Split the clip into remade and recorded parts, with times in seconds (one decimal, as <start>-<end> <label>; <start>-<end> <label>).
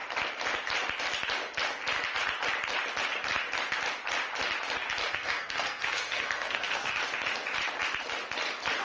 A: 0.0-5.0 recorded; 5.0-7.0 remade; 7.0-8.8 recorded